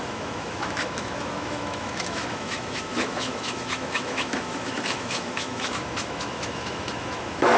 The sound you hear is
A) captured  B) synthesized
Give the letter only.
B